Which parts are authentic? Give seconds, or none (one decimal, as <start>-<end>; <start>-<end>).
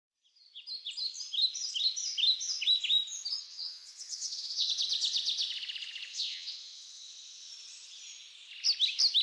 0.0-3.4; 4.7-6.1; 7.5-9.2